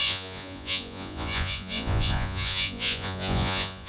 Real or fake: fake